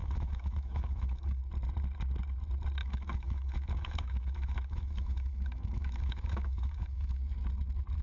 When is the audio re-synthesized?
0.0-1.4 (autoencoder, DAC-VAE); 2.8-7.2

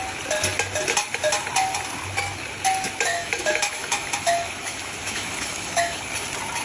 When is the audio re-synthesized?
3.1-6.0 (autoencoder, DAC-VAE)

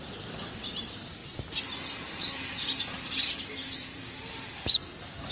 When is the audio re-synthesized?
none

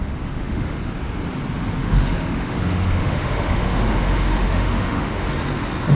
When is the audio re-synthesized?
0.0-0.8 (autoencoder, DAC-VAE); 1.8-5.3

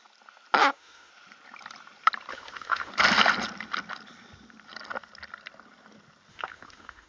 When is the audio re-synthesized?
0.6-1.1 (autoencoder, DAC-VAE); 2.3-2.9; 6.3-7.1

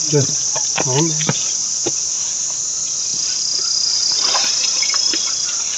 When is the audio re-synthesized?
none